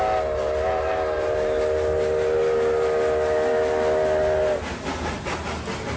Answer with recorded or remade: recorded